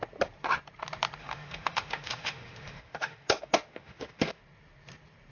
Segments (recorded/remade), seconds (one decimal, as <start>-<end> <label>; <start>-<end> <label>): 0.0-1.2 recorded; 1.2-4.4 remade; 4.4-5.3 recorded